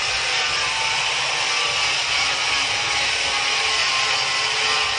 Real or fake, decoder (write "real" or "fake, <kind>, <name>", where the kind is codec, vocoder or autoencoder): real